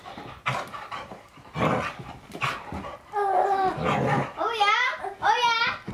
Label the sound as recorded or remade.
recorded